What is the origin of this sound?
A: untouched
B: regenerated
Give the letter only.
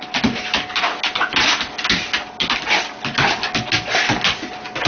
A